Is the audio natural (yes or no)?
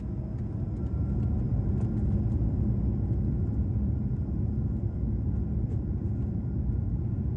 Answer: yes